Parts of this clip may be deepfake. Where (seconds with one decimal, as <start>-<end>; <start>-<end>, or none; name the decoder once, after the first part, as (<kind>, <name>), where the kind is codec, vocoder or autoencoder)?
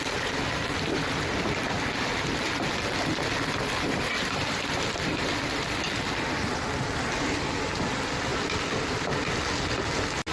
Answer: none